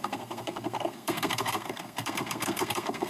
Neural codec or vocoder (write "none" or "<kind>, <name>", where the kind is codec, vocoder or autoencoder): codec, SNAC